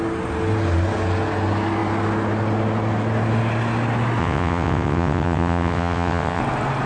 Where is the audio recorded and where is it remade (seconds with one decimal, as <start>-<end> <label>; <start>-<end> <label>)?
0.0-4.2 recorded; 4.2-6.4 remade; 6.4-6.9 recorded